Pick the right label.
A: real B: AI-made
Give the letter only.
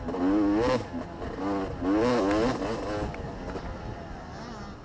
A